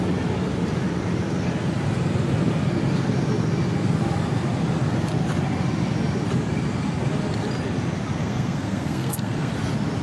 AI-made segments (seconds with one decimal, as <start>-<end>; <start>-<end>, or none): 8.2-9.5